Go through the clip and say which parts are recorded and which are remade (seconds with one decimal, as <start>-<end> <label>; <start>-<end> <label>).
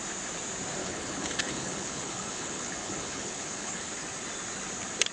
0.0-0.8 recorded; 0.8-3.9 remade; 3.9-5.1 recorded